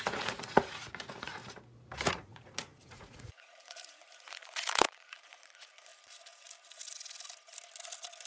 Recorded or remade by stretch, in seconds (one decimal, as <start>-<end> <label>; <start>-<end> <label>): 0.0-1.4 remade; 1.4-2.1 recorded; 2.1-5.9 remade; 5.9-8.3 recorded